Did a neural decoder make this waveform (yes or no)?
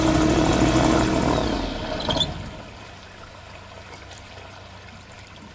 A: no